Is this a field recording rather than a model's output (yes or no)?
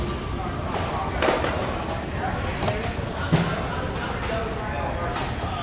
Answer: yes